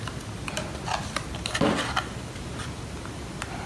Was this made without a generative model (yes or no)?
yes